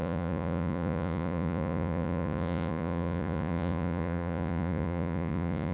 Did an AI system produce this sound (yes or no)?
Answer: yes